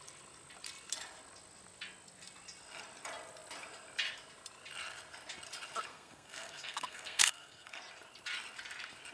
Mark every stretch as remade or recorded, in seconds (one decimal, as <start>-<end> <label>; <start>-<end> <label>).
0.0-5.9 recorded; 5.9-7.8 remade; 7.8-9.1 recorded